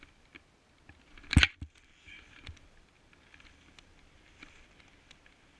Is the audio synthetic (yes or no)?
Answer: no